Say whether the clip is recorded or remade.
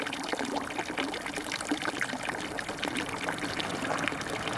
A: recorded